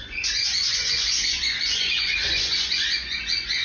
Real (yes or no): no